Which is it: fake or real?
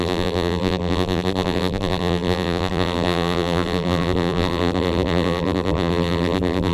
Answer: fake